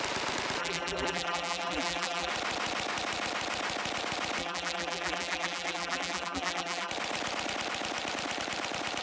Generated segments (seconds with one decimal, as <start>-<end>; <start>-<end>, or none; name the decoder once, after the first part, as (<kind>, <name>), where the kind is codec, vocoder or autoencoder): 0.6-2.3 (vocoder, BigVGAN v2); 4.4-6.9